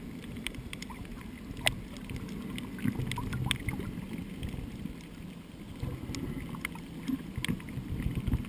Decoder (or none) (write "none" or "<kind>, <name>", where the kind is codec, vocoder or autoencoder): none